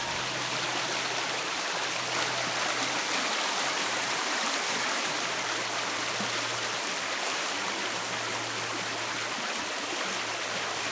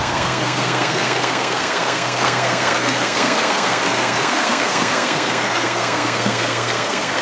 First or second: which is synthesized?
second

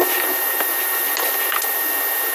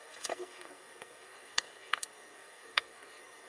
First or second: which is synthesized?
second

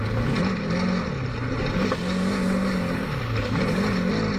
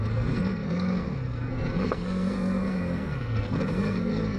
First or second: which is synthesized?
second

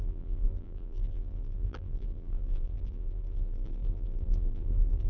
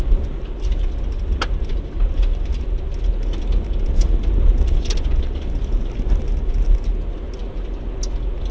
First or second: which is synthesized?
first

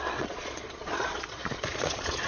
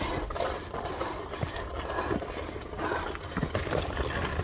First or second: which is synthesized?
first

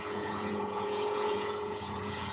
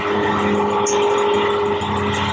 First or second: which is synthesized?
first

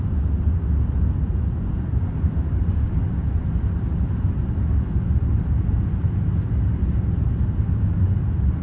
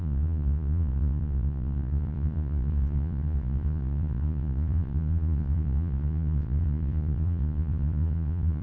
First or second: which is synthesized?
second